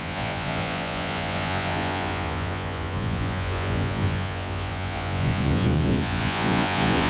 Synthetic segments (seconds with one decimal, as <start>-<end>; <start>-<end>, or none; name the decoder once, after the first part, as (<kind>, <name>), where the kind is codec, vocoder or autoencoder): 0.0-7.1 (vocoder, Vocos)